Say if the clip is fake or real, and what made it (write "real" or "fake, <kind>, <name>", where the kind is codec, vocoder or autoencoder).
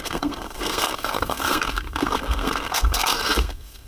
fake, codec, SNAC